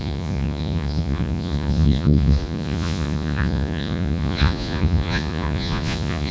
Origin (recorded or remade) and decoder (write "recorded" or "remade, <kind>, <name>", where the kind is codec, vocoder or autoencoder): remade, vocoder, Vocos